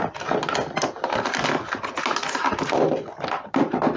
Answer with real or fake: real